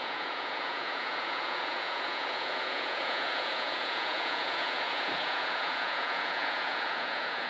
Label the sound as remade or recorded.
remade